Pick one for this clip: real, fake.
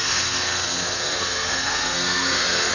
fake